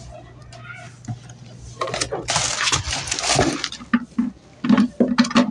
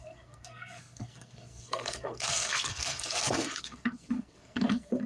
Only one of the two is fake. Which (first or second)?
second